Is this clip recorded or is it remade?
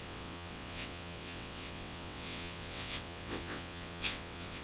remade